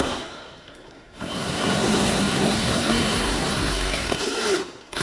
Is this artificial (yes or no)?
yes